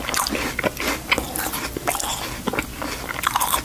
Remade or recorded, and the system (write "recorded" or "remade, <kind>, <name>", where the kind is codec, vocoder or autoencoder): recorded